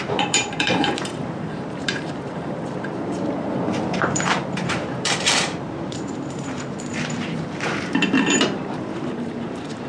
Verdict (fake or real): fake